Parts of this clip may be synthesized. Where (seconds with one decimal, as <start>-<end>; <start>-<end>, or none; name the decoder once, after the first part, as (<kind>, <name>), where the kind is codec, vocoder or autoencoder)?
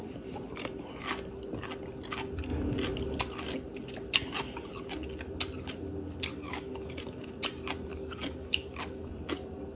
6.3-7.0 (codec, DAC); 7.9-9.1